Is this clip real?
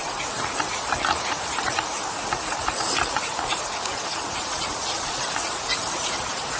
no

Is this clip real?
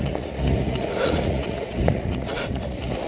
no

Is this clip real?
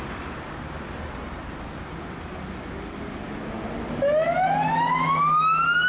yes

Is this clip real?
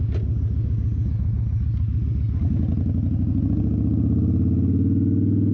yes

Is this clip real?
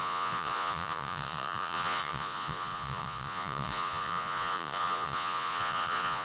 no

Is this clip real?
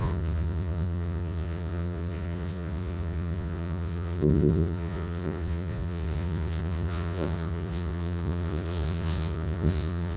no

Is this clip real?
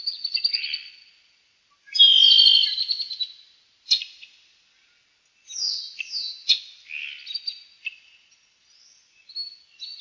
yes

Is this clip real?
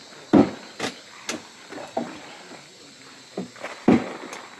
yes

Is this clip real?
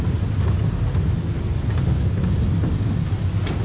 yes